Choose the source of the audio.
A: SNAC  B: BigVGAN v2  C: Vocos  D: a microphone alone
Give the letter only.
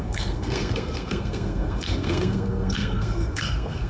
A